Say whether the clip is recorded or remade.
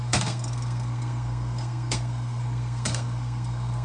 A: remade